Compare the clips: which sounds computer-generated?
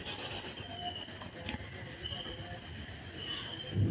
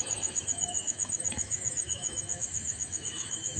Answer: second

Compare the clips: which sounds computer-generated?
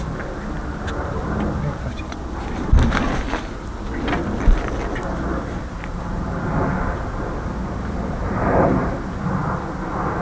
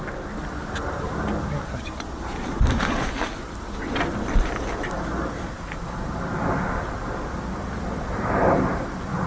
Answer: second